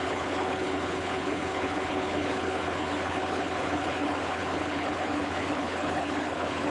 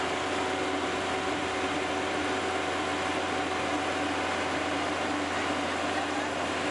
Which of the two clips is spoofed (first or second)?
first